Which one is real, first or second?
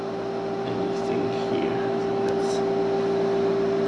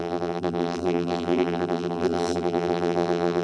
first